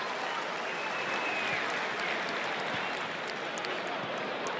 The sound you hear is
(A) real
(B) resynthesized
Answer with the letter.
A